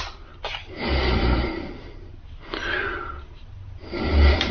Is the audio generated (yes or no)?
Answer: yes